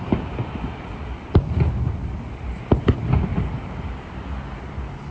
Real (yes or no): yes